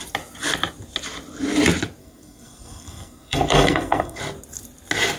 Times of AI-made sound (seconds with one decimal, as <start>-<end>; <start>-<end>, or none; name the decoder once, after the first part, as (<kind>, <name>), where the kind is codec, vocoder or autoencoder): 2.0-4.2 (codec, SNAC)